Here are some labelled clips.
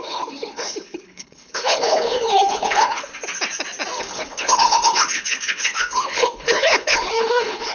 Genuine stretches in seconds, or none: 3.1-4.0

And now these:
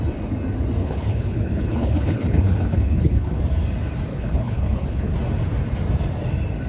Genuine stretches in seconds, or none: 0.0-0.8; 3.4-4.1; 5.1-6.7